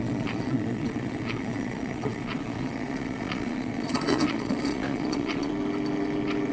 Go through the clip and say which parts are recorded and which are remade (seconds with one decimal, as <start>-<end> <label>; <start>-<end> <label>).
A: 0.0-5.5 remade; 5.5-6.5 recorded